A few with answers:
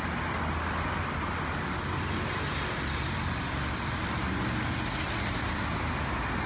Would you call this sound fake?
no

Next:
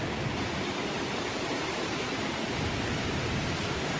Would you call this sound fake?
no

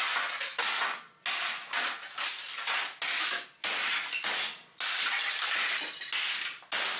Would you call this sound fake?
no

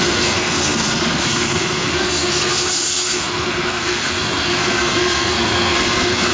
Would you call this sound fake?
yes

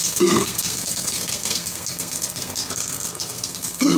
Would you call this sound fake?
yes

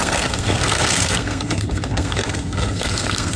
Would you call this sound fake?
yes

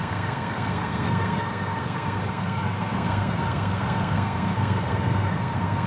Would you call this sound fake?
yes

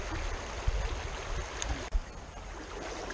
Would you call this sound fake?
no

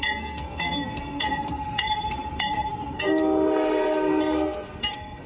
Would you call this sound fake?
yes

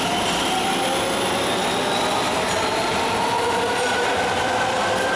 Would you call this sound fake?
no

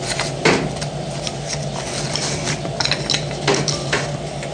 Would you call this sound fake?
no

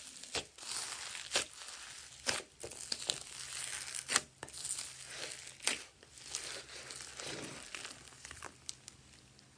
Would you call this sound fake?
no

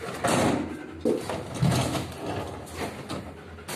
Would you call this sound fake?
no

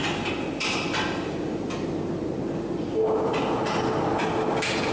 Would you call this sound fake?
no